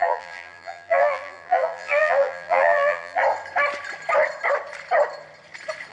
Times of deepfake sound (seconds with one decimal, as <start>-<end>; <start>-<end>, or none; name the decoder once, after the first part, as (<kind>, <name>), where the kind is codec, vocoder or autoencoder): 0.0-3.2 (vocoder, BigVGAN v2)